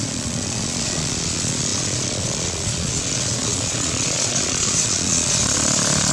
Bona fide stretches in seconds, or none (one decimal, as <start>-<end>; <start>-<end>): 5.4-6.1